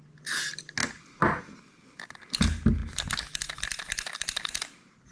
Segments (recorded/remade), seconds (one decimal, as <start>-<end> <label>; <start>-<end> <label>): 0.0-5.1 recorded